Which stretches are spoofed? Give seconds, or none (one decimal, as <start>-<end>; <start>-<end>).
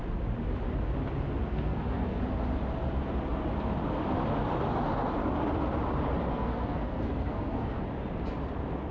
1.5-2.2; 6.3-7.8